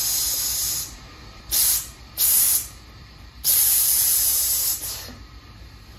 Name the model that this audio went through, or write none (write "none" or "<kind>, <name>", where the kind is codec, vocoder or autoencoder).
vocoder, BigVGAN v2